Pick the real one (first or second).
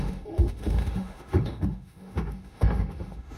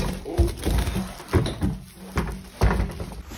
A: second